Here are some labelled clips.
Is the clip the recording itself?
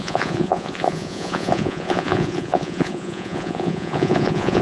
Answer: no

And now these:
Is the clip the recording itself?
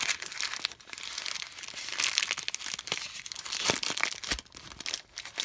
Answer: yes